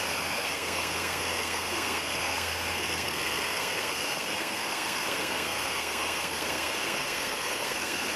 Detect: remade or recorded remade